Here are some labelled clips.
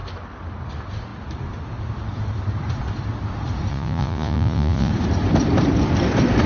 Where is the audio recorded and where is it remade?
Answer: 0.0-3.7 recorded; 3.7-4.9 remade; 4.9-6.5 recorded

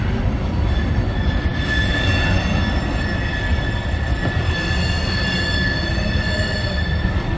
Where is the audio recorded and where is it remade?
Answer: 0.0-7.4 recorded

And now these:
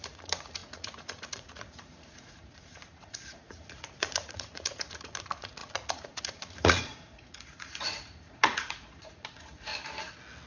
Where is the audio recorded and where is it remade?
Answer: 0.0-9.7 remade; 9.7-10.5 recorded

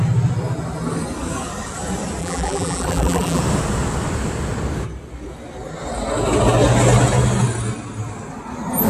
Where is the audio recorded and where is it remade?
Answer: 0.0-2.2 recorded; 2.2-3.4 remade; 3.4-8.9 recorded

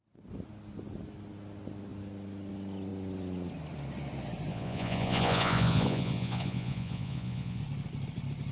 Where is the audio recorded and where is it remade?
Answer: 0.0-4.5 recorded; 4.5-7.6 remade; 7.6-8.5 recorded